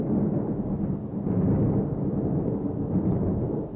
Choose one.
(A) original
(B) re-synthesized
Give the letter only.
A